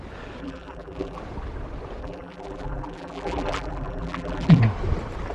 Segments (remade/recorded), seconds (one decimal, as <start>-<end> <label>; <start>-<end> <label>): 0.0-0.4 recorded; 0.4-1.2 remade; 1.2-2.0 recorded; 2.0-4.6 remade; 4.6-5.3 recorded